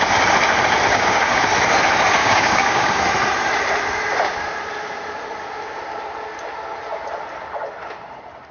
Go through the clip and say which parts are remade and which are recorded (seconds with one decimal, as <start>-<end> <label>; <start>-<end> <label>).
0.0-0.9 recorded; 0.9-1.4 remade; 1.4-2.2 recorded; 2.2-3.0 remade; 3.0-8.5 recorded

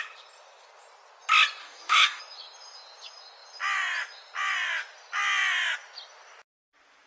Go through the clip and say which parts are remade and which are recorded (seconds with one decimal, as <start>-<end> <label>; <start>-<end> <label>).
0.0-1.6 recorded; 1.6-2.2 remade; 2.2-7.1 recorded

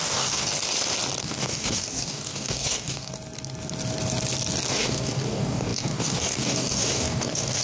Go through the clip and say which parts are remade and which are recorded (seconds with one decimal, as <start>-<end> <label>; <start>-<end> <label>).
0.0-0.5 remade; 0.5-1.2 recorded; 1.2-3.1 remade; 3.1-4.7 recorded; 4.7-7.6 remade